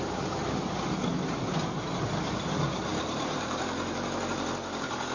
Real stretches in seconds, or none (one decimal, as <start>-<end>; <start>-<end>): 0.0-2.9; 3.6-5.1